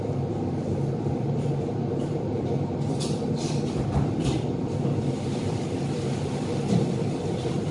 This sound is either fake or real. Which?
fake